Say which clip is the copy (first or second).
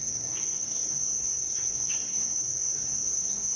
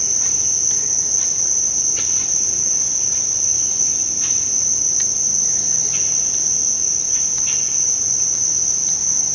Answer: first